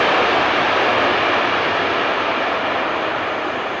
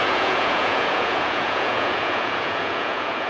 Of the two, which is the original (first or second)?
first